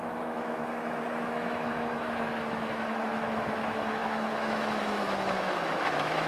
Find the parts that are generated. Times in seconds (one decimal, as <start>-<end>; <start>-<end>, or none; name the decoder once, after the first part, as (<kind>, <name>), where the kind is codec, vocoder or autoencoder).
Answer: 0.0-6.3 (autoencoder, DAC-VAE)